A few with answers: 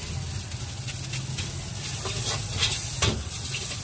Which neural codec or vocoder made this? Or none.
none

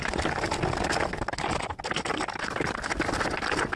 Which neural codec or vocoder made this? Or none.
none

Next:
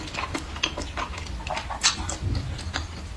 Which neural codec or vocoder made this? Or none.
none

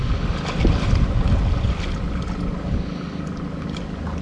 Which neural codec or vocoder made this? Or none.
none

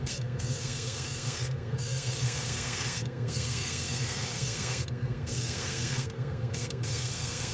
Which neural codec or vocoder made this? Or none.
codec, SNAC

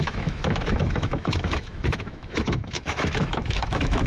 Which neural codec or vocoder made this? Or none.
autoencoder, DAC-VAE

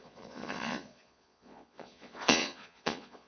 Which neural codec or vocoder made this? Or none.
vocoder, Vocos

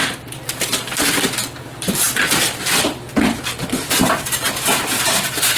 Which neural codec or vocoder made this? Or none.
vocoder, BigVGAN v2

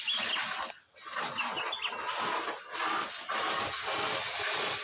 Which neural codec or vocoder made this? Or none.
none